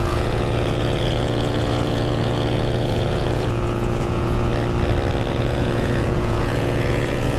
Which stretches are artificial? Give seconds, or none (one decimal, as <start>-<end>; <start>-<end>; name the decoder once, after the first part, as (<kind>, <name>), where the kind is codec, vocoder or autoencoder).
0.0-4.5 (vocoder, Vocos); 5.3-7.4